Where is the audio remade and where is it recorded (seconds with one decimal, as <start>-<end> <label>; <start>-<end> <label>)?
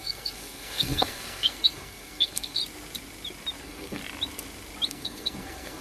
0.0-2.6 remade; 2.6-3.6 recorded; 3.6-4.0 remade; 4.0-4.9 recorded; 4.9-5.8 remade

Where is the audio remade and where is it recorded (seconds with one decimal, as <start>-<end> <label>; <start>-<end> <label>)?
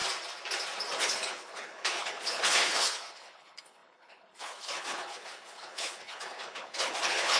0.0-1.0 recorded; 1.0-7.4 remade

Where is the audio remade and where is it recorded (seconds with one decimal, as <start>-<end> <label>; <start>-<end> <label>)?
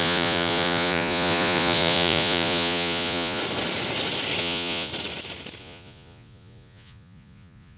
0.0-3.4 remade; 3.4-4.4 recorded; 4.4-4.9 remade; 4.9-5.6 recorded; 5.6-7.8 remade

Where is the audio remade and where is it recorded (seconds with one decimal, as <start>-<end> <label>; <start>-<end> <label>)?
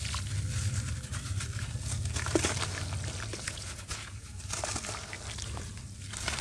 0.0-3.3 recorded; 3.3-4.4 remade; 4.4-6.4 recorded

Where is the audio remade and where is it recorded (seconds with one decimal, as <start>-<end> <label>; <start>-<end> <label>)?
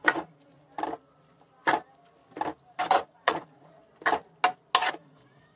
0.0-0.5 remade; 0.5-2.9 recorded; 2.9-3.8 remade; 3.8-4.9 recorded; 4.9-5.6 remade